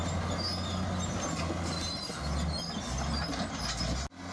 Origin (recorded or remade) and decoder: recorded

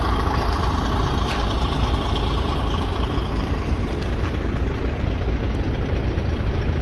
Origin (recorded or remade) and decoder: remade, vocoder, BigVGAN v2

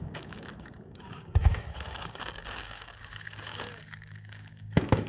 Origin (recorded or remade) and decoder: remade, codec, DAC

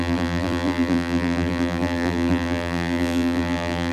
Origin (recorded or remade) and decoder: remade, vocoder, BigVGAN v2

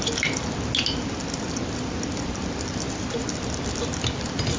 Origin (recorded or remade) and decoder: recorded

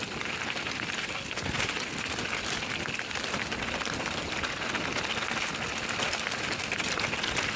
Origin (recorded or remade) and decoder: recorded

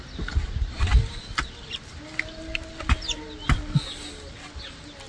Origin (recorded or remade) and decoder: recorded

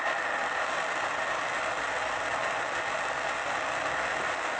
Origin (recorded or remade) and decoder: recorded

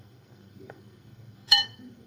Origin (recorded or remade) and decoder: remade, codec, SNAC